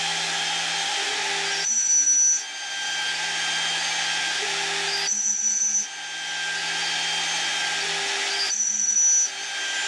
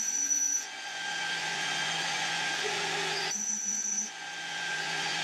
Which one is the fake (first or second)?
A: second